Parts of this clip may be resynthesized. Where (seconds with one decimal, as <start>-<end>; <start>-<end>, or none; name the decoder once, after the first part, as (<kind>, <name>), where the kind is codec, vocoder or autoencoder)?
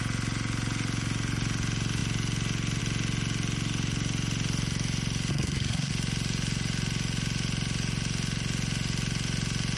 5.3-5.9 (codec, SNAC)